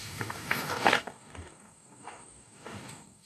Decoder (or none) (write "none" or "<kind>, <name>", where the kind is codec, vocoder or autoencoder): codec, DAC